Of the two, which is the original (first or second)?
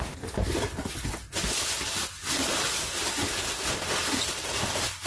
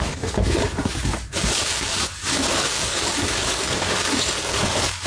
first